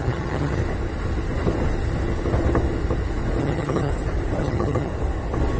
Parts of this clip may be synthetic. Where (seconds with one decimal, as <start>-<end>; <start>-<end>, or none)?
0.0-0.6; 3.4-3.9; 4.4-4.9